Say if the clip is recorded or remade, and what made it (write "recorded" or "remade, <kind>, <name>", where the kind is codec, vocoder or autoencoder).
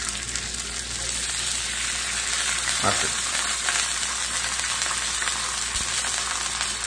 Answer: recorded